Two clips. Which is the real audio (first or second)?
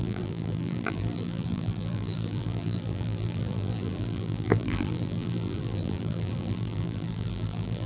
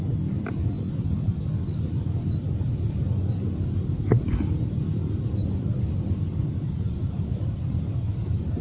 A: second